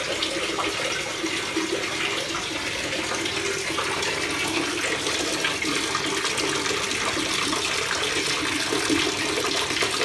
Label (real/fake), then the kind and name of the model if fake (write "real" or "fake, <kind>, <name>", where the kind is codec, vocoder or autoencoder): real